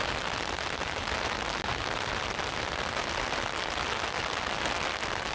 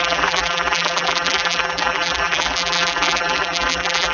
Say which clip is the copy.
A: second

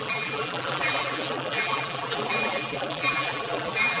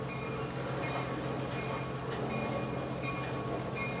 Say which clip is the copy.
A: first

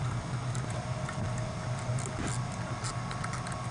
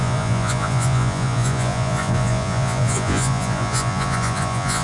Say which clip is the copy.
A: second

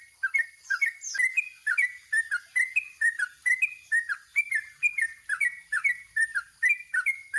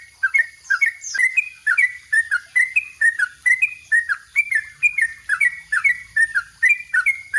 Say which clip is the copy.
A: second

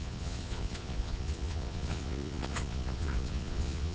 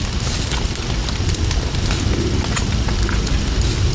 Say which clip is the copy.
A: first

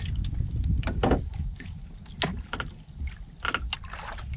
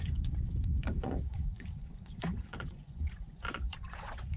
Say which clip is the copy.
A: second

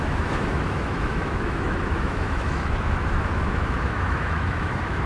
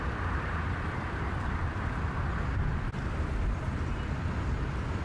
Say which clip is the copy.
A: first